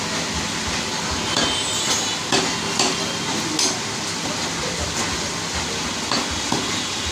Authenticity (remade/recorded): recorded